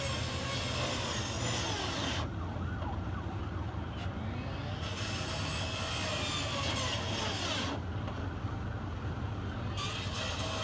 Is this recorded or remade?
recorded